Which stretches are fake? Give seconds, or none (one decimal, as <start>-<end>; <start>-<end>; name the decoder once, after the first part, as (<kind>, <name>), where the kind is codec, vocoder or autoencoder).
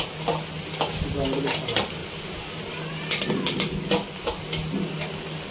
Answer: none